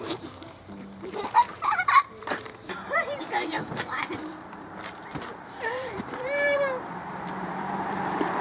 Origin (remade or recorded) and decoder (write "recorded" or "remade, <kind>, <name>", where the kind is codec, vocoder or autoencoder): remade, vocoder, BigVGAN v2